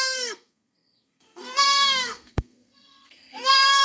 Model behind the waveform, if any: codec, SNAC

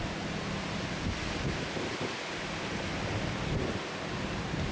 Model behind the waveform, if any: none